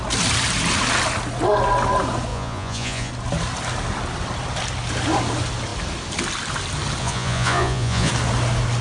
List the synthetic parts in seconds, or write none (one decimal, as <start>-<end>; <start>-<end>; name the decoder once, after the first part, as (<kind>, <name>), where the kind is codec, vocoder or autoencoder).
2.3-3.1 (vocoder, Vocos); 7.0-8.1